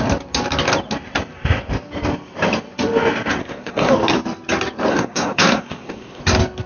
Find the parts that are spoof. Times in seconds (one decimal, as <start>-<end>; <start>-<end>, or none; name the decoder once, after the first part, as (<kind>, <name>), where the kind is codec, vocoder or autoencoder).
3.4-3.9 (codec, SNAC); 4.9-6.2